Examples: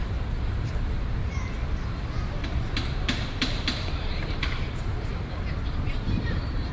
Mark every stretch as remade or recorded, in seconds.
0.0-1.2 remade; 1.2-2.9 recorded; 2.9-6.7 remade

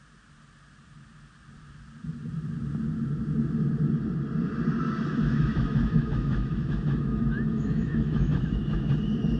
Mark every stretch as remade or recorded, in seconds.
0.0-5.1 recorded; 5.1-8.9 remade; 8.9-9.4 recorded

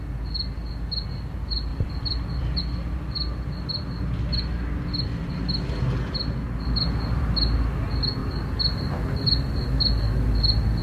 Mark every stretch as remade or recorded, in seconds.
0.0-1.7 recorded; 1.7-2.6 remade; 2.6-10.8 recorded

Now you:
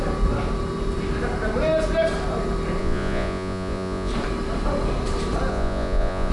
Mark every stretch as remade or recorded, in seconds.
0.0-2.8 recorded; 2.8-4.1 remade; 4.1-5.5 recorded; 5.5-6.3 remade